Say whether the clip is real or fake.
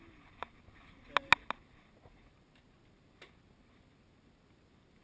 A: real